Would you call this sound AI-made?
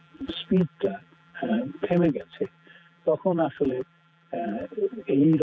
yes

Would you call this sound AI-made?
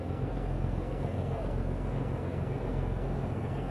yes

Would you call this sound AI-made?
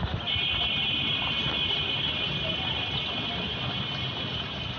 no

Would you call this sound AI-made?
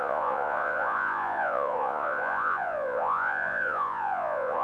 yes